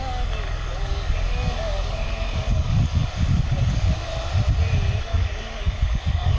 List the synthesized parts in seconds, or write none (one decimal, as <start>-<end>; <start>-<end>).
0.0-4.1; 5.0-6.4